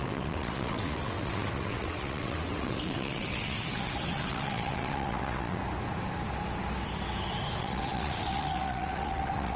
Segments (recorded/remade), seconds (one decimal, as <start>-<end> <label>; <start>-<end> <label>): 0.0-5.6 remade; 5.6-7.6 recorded; 7.6-9.6 remade